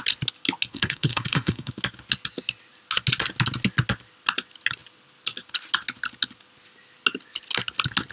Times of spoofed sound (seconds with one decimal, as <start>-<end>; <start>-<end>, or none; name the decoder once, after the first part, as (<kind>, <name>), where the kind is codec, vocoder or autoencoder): 0.7-1.7 (codec, SNAC)